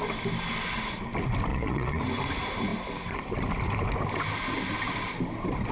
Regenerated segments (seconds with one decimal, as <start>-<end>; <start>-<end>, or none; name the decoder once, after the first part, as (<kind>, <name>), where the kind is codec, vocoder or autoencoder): 1.5-2.0 (vocoder, Vocos)